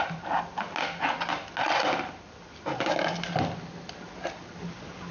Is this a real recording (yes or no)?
yes